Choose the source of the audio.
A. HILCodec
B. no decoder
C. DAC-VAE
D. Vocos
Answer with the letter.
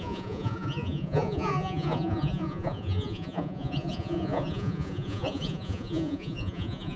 D